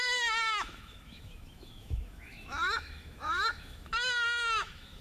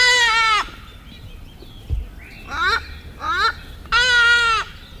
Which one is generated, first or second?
first